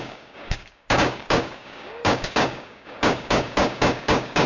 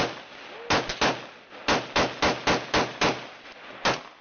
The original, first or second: second